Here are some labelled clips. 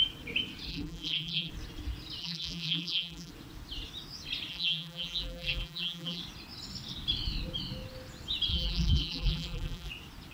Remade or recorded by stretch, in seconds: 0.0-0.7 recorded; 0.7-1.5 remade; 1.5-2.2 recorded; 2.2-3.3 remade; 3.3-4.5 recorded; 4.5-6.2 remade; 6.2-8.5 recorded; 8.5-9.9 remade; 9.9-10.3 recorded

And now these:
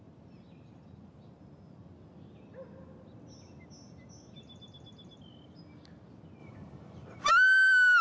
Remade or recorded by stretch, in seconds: 0.0-6.4 recorded; 6.4-7.3 remade; 7.3-8.0 recorded

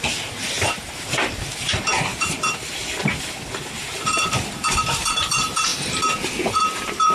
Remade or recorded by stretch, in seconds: 0.0-5.7 remade; 5.7-6.4 recorded; 6.4-7.1 remade

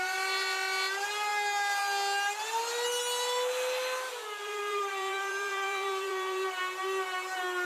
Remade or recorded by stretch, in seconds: 0.0-4.4 recorded; 4.4-6.6 remade; 6.6-7.6 recorded

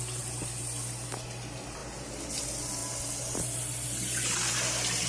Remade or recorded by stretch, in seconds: 0.0-5.1 recorded

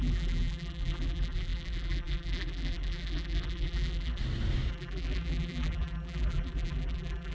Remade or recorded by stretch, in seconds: 0.0-4.2 remade; 4.2-4.7 recorded; 4.7-7.3 remade

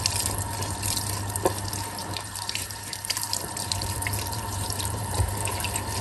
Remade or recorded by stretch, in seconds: 0.0-2.0 recorded; 2.0-5.6 remade; 5.6-6.0 recorded

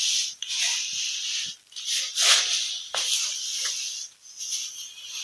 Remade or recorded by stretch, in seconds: 0.0-2.2 recorded; 2.2-4.8 remade; 4.8-5.2 recorded